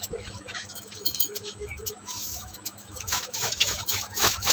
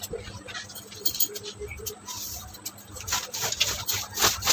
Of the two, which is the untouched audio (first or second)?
second